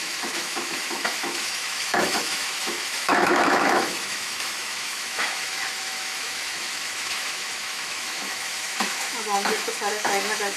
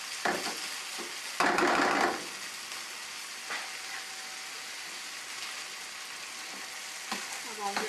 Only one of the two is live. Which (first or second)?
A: second